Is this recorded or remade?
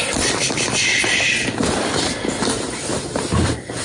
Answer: recorded